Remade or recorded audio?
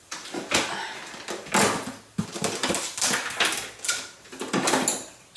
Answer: recorded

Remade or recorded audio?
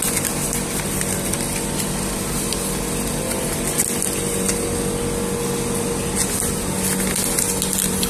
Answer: recorded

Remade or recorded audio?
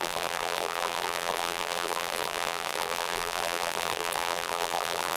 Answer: remade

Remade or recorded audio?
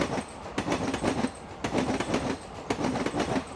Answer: recorded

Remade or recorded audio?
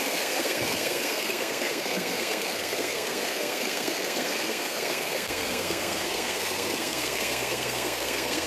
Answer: remade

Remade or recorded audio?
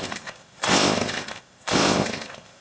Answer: remade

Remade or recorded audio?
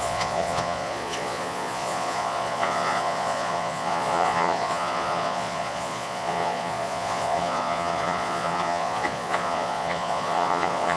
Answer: remade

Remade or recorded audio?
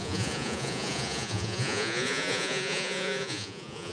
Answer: remade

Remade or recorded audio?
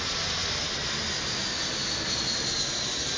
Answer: recorded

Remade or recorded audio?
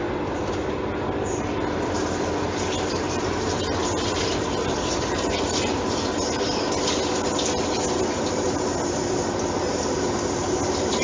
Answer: recorded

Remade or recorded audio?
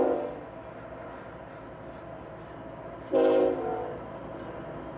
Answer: recorded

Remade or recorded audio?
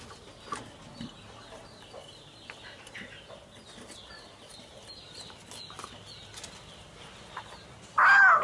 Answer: recorded